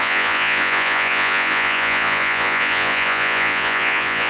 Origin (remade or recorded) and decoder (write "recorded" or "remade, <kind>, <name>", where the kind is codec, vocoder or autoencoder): remade, vocoder, Vocos